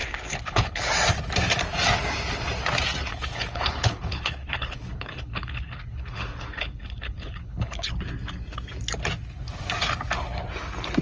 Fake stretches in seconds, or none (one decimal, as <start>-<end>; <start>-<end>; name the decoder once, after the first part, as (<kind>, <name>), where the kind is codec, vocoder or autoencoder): 0.0-0.9 (codec, HILCodec); 3.1-7.9